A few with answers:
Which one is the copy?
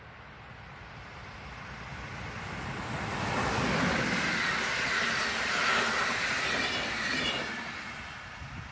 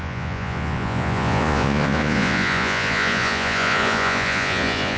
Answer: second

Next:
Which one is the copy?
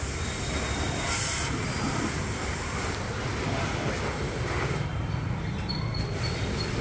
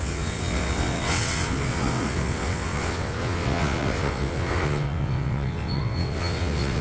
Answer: second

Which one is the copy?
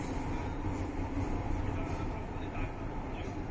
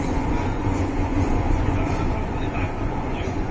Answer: second